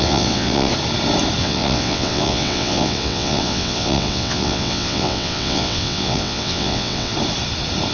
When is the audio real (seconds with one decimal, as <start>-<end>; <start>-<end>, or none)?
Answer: 0.7-1.4; 7.1-7.9